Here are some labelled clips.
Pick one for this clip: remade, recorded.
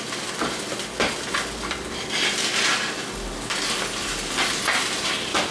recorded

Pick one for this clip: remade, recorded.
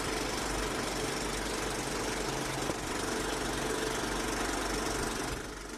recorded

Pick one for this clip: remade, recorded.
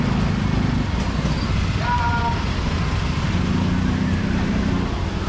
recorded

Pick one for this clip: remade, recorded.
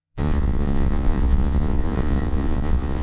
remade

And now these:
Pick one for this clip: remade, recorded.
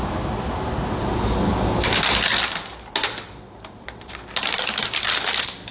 recorded